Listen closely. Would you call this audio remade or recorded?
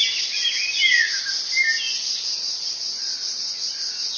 recorded